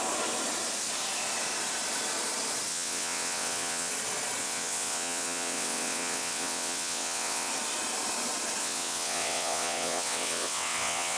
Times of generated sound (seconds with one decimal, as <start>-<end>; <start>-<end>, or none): 2.7-3.9; 4.4-7.5; 8.6-11.2